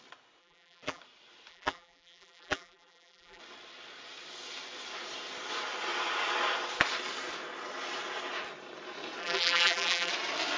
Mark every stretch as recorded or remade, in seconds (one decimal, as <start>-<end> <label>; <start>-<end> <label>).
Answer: 0.0-0.4 recorded; 0.4-1.0 remade; 1.0-1.5 recorded; 1.5-3.4 remade; 3.4-9.2 recorded; 9.2-10.1 remade; 10.1-10.6 recorded